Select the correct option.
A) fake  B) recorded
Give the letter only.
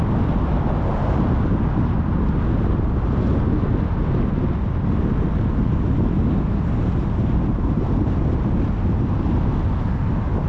B